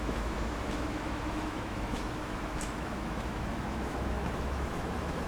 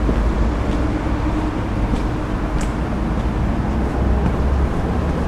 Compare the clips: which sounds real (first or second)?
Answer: second